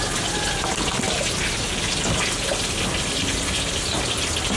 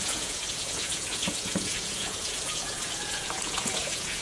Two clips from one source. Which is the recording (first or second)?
first